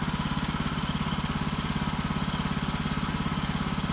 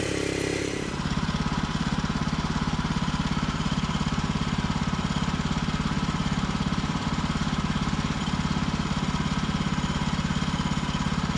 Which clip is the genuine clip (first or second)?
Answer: first